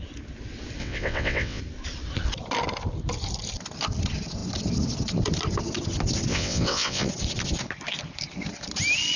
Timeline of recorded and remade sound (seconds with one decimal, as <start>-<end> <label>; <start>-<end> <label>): 0.0-0.8 recorded; 0.8-1.6 remade; 1.6-6.3 recorded; 6.3-7.1 remade; 7.1-9.2 recorded